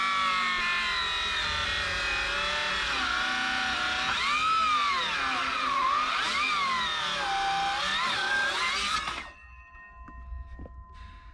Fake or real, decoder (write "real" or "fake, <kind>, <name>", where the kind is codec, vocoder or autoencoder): real